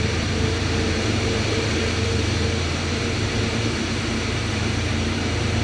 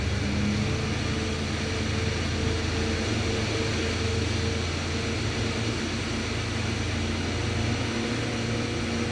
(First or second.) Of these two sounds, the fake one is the first